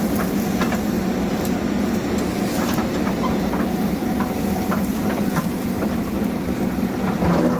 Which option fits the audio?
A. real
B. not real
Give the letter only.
A